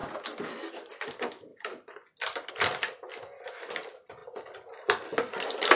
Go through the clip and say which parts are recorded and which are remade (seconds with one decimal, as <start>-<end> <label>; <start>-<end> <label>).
0.0-5.8 recorded